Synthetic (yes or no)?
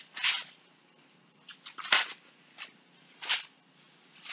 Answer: no